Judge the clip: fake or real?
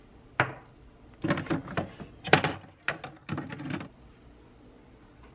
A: real